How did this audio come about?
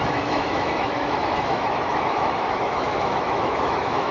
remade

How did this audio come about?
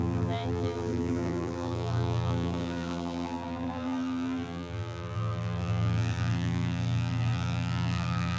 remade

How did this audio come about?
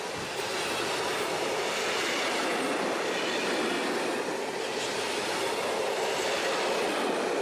recorded